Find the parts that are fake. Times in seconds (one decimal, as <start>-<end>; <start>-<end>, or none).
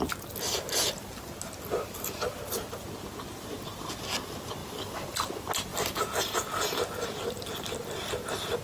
none